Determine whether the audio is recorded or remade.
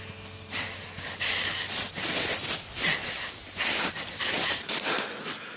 remade